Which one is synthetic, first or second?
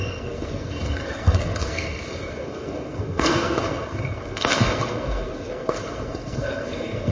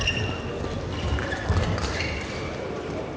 first